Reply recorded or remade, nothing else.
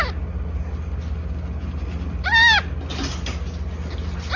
recorded